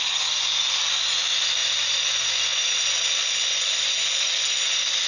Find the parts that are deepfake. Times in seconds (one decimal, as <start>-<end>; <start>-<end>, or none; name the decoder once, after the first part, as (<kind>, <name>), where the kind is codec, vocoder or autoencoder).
none